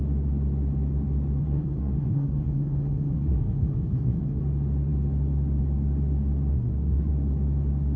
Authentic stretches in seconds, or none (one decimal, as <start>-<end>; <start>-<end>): 0.0-1.4; 4.4-6.5; 7.1-8.0